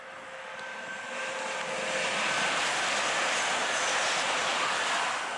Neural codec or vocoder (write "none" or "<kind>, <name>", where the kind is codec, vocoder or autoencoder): none